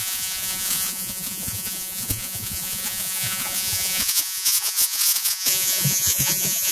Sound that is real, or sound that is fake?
fake